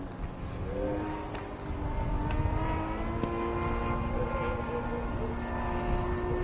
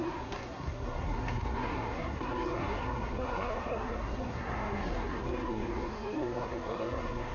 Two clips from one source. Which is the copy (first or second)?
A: second